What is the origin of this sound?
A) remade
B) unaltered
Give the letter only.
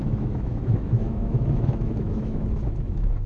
A